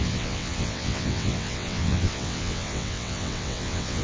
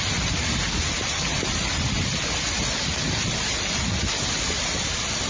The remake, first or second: first